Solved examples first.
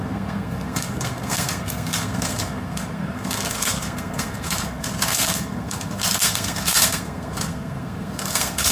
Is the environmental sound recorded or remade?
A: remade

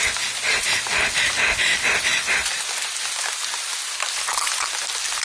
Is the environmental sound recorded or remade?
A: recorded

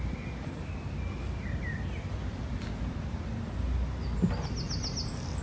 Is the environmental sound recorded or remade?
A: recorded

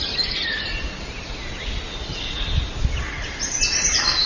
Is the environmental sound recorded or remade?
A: recorded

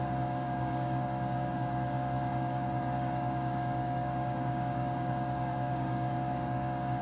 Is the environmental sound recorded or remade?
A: remade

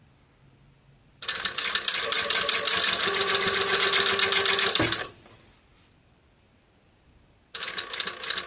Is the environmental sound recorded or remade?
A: recorded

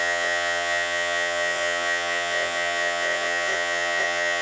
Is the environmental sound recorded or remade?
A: remade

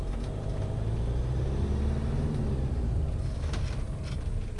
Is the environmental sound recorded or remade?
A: recorded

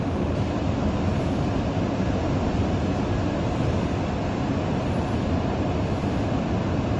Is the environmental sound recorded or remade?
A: recorded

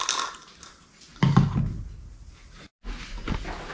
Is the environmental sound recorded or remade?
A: recorded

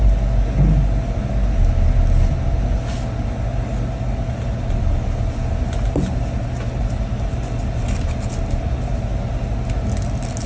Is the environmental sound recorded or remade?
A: recorded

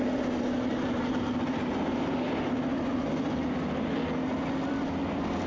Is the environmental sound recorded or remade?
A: recorded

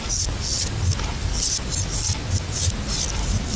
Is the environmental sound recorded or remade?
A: recorded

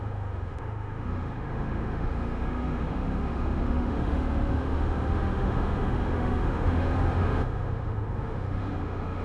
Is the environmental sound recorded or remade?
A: remade